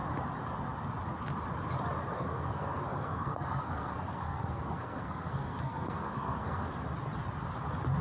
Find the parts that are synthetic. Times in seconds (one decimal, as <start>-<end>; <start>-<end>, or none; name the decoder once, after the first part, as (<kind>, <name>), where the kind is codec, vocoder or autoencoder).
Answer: 2.1-6.7 (codec, SNAC)